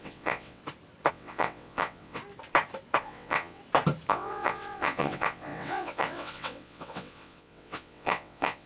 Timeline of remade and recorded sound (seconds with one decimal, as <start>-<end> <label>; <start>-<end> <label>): 0.0-0.6 remade; 0.6-1.1 recorded; 1.1-2.2 remade; 2.2-3.0 recorded; 3.0-3.6 remade; 3.6-4.1 recorded; 4.1-8.7 remade